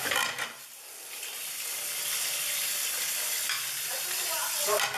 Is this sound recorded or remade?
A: recorded